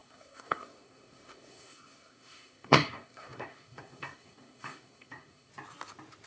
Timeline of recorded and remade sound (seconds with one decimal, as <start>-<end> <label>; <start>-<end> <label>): 0.0-5.5 remade; 5.5-6.3 recorded